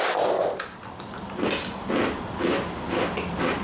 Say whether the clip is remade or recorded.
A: recorded